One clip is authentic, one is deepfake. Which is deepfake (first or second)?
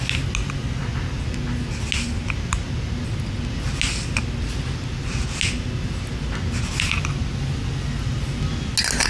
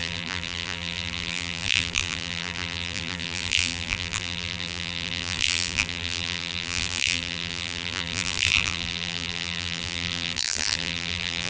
second